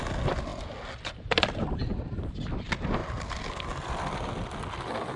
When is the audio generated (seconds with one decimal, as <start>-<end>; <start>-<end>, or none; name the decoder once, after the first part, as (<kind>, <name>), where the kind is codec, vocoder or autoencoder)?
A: 3.0-4.0 (vocoder, BigVGAN v2)